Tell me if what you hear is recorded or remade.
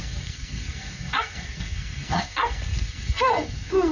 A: remade